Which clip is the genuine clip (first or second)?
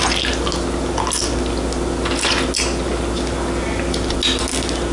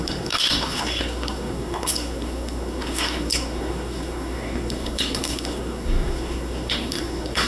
first